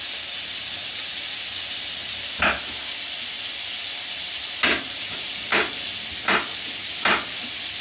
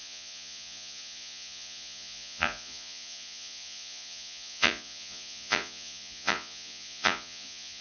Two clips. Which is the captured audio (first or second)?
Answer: first